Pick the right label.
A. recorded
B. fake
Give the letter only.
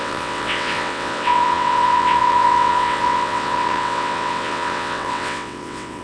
B